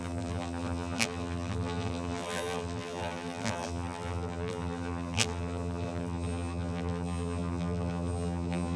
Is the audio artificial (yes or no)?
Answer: yes